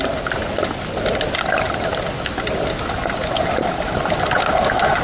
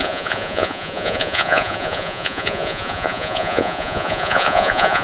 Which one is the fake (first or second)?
second